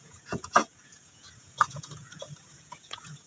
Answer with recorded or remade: remade